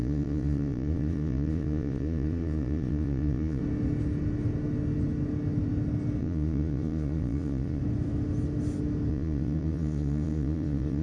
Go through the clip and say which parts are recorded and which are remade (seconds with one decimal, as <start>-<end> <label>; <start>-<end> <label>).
0.0-3.6 remade; 3.6-6.2 recorded; 6.2-7.8 remade; 7.8-9.1 recorded; 9.1-11.0 remade